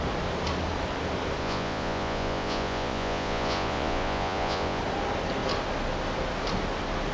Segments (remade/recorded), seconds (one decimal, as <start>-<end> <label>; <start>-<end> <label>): 0.0-1.4 recorded; 1.4-4.8 remade; 4.8-7.1 recorded